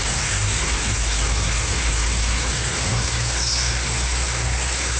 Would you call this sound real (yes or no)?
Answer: no